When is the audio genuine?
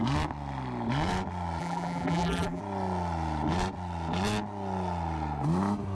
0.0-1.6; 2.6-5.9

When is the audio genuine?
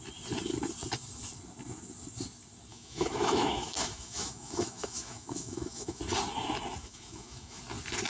0.0-2.7; 6.0-6.8; 7.6-8.1